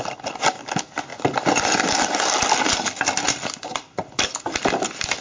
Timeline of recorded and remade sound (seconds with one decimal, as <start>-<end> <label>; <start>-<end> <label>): 0.0-5.2 recorded

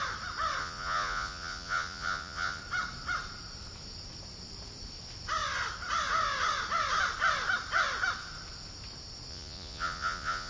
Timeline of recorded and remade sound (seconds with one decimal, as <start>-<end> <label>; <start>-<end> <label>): 0.0-0.6 recorded; 0.6-2.6 remade; 2.6-9.3 recorded; 9.3-10.5 remade

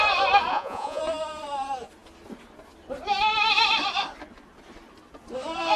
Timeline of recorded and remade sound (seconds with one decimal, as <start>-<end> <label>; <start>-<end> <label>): 0.0-0.5 recorded; 0.5-1.0 remade; 1.0-5.8 recorded

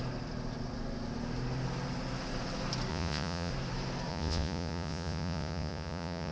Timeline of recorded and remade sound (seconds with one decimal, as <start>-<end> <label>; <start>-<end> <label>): 0.0-2.9 recorded; 2.9-3.5 remade; 3.5-4.1 recorded; 4.1-6.3 remade

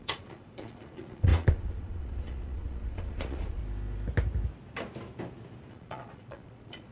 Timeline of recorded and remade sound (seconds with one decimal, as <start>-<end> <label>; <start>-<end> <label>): 0.0-3.6 remade; 3.6-5.7 recorded; 5.7-6.9 remade